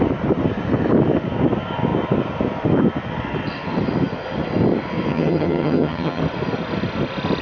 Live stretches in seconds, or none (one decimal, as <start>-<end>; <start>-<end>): 0.0-5.1; 6.2-7.4